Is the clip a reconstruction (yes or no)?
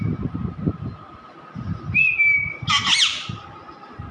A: no